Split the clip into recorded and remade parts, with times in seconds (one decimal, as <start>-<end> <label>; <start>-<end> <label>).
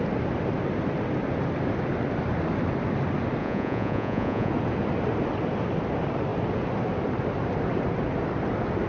0.0-3.4 recorded; 3.4-4.5 remade; 4.5-8.9 recorded